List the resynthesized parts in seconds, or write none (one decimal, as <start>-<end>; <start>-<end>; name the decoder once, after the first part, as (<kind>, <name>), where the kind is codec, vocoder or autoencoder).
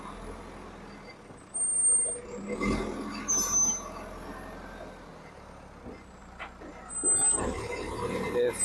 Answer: 6.2-6.9 (vocoder, BigVGAN v2)